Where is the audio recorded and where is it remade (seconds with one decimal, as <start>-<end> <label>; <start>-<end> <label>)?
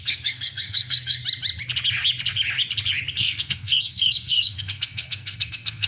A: 0.0-1.2 remade; 1.2-3.1 recorded; 3.1-5.9 remade